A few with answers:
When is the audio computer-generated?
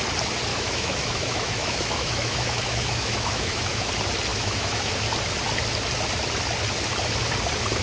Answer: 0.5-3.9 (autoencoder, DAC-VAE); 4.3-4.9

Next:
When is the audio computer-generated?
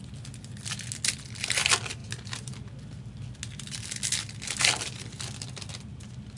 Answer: none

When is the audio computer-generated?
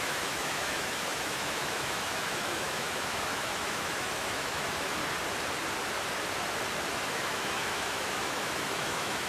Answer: 0.0-5.0 (autoencoder, DAC-VAE); 6.9-9.3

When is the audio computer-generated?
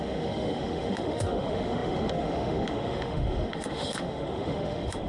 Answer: 0.0-5.1 (autoencoder, DAC-VAE)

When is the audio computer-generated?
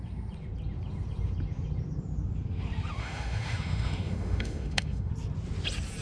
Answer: 3.0-5.1 (autoencoder, DAC-VAE)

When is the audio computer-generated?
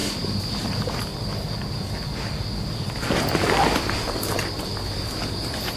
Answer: none